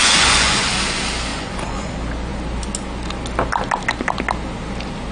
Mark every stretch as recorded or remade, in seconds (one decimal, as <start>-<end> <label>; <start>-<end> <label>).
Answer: 0.0-0.7 remade; 0.7-1.3 recorded; 1.3-1.9 remade; 1.9-5.1 recorded